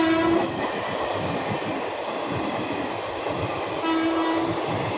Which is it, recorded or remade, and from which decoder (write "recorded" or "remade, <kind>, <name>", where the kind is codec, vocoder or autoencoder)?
recorded